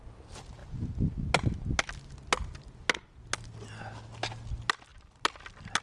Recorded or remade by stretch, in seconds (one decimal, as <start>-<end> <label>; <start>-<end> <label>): 0.0-5.8 recorded